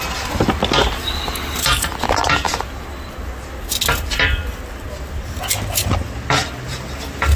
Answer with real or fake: real